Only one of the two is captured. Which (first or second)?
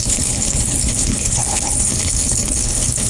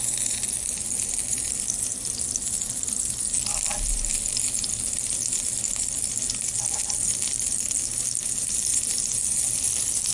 second